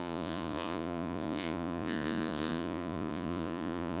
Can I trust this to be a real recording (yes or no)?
no